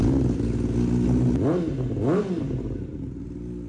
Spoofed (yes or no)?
no